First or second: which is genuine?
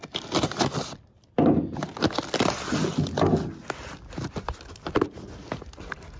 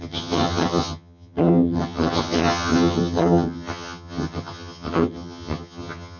first